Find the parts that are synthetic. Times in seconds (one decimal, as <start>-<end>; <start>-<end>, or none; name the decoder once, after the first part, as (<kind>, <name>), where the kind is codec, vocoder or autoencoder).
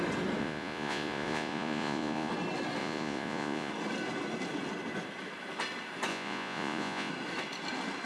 0.4-2.3 (vocoder, Vocos); 2.8-3.7; 6.1-7.1